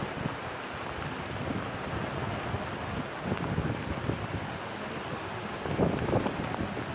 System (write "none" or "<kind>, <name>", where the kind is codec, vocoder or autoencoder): none